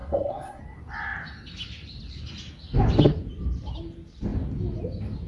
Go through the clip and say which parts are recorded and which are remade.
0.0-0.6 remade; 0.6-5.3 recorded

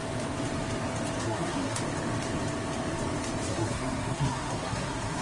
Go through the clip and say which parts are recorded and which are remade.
0.0-1.2 recorded; 1.2-1.8 remade; 1.8-3.5 recorded; 3.5-5.2 remade

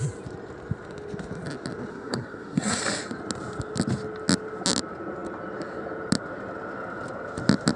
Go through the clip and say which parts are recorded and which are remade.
0.0-1.9 recorded; 1.9-2.8 remade; 2.8-7.8 recorded

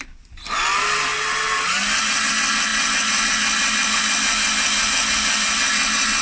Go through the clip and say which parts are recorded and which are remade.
0.0-6.2 recorded